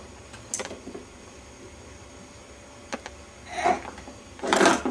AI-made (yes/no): no